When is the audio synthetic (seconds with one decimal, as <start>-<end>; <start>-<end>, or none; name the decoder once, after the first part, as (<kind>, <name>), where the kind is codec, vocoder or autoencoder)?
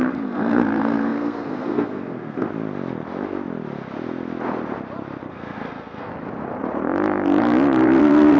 0.0-2.5 (codec, SNAC); 5.3-6.1; 8.0-8.4